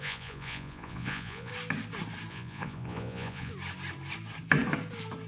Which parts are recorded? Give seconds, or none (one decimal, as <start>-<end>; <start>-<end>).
1.5-2.3; 3.5-5.3